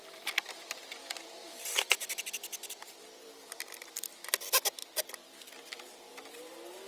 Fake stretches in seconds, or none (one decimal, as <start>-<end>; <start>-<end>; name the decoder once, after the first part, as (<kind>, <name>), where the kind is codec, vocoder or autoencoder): 0.0-4.1 (vocoder, BigVGAN v2)

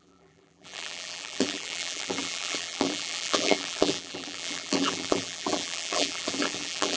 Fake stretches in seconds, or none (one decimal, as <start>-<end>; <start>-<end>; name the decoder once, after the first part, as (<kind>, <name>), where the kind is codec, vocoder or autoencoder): 0.0-7.0 (vocoder, BigVGAN v2)